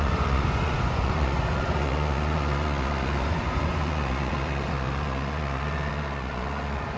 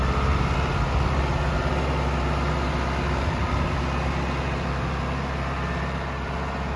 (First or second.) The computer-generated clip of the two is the first